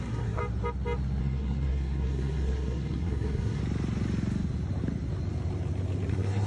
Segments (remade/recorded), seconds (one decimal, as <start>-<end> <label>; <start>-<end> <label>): 0.0-0.4 remade; 0.4-1.2 recorded; 1.2-3.6 remade; 3.6-6.1 recorded; 6.1-6.5 remade